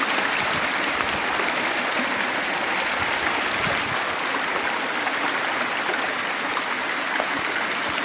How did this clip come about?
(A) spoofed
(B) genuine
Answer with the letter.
B